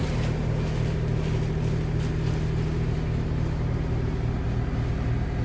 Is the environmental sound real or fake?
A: real